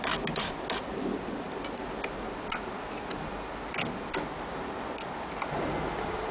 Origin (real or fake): real